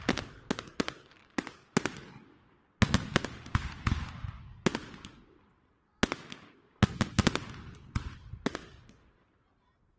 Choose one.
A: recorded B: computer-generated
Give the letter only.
A